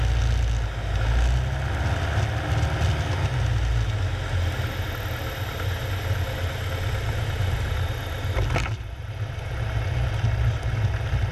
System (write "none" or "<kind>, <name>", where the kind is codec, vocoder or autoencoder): none